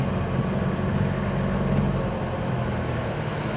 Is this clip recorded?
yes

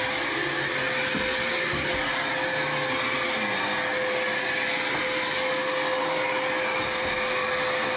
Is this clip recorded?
yes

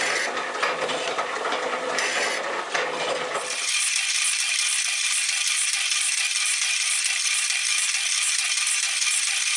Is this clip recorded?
no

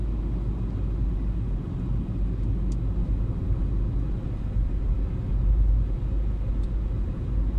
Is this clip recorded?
yes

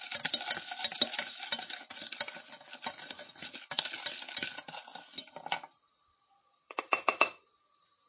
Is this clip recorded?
no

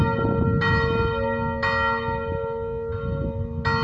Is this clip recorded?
yes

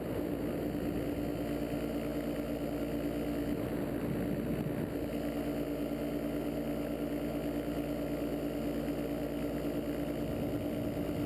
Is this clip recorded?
yes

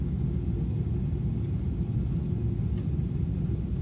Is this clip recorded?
yes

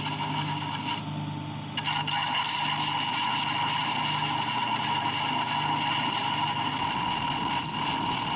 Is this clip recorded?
yes